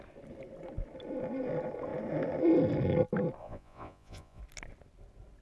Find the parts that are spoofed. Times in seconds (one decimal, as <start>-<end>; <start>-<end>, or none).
3.4-4.4